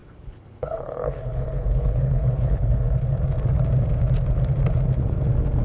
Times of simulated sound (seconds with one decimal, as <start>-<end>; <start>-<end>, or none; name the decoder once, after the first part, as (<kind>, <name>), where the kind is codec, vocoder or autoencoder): 0.0-2.8 (codec, HILCodec)